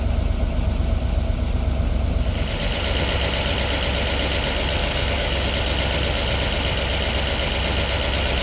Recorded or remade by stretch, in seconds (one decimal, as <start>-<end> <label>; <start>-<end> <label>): 0.0-4.8 recorded; 4.8-5.5 remade; 5.5-8.4 recorded